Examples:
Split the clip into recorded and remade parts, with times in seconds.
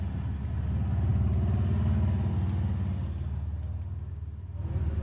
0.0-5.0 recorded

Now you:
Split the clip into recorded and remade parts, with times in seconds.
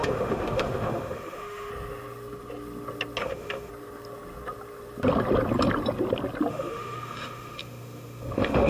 0.0-1.7 remade; 1.7-3.2 recorded; 3.2-3.7 remade; 3.7-6.5 recorded; 6.5-8.7 remade